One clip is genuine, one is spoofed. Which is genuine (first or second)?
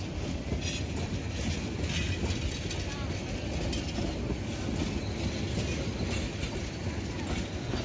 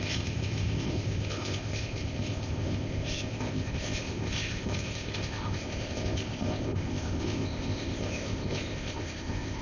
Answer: first